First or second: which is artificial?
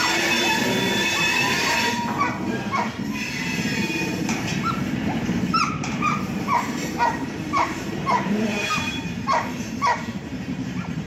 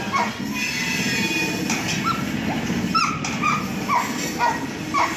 first